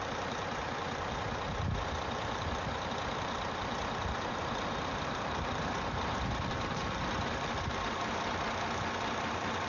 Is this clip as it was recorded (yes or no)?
no